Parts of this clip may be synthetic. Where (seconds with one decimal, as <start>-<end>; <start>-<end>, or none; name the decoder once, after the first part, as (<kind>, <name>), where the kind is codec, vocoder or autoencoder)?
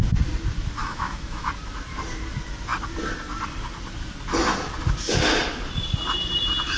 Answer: 0.8-1.5 (autoencoder, DAC-VAE)